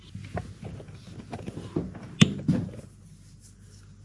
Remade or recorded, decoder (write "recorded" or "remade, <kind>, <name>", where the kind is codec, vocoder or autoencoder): recorded